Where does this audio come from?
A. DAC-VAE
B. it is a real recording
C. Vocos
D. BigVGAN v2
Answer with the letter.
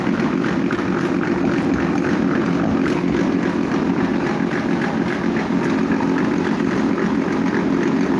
B